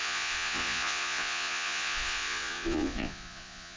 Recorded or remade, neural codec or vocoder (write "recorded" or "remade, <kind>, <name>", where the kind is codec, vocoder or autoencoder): remade, vocoder, Vocos